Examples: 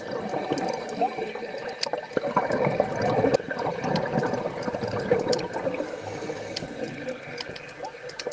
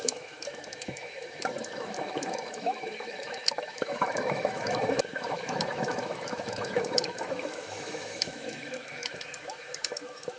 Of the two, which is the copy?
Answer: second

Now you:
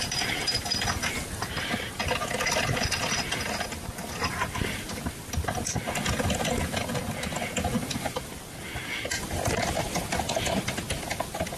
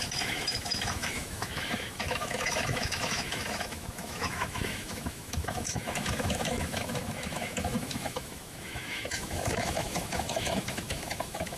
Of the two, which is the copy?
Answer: second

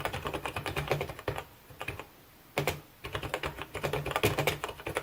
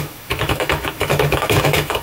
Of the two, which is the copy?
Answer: second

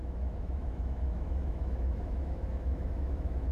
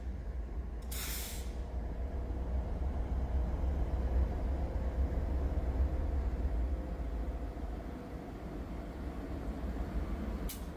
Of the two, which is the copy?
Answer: first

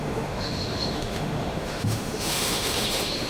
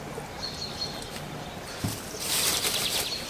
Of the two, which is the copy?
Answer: first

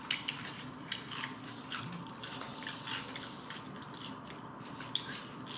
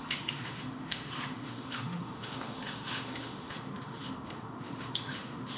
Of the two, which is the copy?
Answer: second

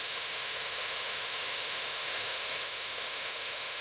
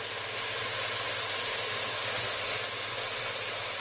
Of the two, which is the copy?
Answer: first